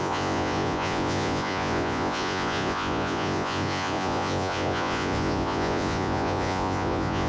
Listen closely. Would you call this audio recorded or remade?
remade